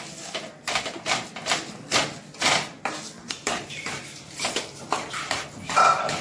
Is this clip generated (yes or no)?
no